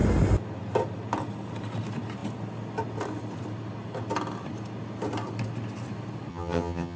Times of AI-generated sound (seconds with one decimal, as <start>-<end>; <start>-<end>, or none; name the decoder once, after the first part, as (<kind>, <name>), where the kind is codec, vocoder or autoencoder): 6.3-7.0 (vocoder, HiFi-GAN)